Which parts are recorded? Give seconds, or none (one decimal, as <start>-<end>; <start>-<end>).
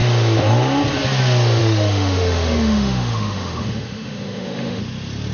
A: 0.0-1.6; 4.8-5.3